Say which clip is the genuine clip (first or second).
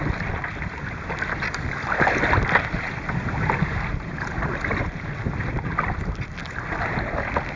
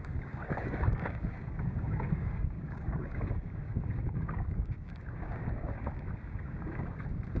first